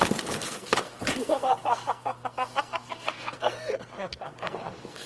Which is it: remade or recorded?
remade